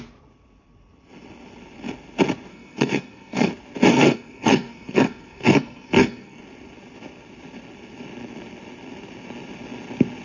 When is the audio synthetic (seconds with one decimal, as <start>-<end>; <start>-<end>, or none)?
2.5-3.5; 3.9-6.4